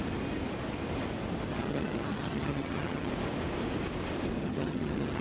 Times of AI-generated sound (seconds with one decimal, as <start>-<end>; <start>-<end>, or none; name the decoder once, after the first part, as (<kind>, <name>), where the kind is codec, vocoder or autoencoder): 1.5-3.1 (vocoder, HiFi-GAN); 4.4-5.2